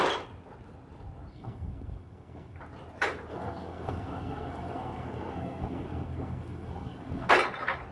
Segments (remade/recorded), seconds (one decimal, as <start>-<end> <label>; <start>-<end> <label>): 0.0-1.3 recorded; 1.3-2.6 remade; 2.6-3.3 recorded; 3.3-7.3 remade; 7.3-7.9 recorded